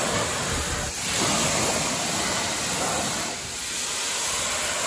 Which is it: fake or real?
real